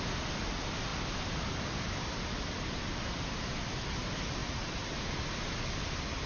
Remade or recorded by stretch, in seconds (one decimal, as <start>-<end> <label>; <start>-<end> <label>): 0.0-6.3 recorded